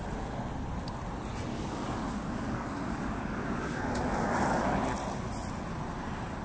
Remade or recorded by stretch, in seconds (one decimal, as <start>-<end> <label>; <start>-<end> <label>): 0.0-1.5 recorded; 1.5-4.8 remade; 4.8-6.4 recorded

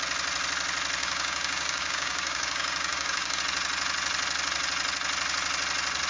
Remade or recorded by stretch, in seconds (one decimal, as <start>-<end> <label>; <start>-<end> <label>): 0.0-1.0 recorded; 1.0-3.4 remade; 3.4-6.1 recorded